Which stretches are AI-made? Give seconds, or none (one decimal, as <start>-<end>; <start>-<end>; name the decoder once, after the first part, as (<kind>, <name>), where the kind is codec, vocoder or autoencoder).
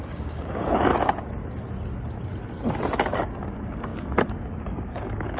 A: 0.0-0.9 (codec, DAC); 3.4-3.9; 4.6-5.4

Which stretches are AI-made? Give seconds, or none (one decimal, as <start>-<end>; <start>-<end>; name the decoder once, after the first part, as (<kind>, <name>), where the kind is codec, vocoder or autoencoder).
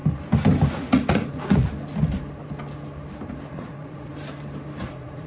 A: 0.7-1.7 (vocoder, Vocos); 3.5-4.1; 4.8-5.3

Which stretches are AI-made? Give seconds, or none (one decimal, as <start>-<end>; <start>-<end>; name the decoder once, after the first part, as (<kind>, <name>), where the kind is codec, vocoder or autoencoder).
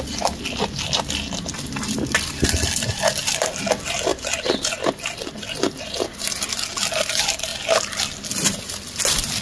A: none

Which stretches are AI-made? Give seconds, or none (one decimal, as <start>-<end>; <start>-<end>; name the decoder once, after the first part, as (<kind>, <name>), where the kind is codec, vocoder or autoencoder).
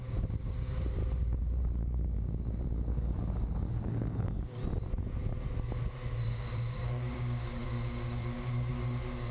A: 0.0-1.0 (codec, DAC); 1.6-4.6; 6.3-9.3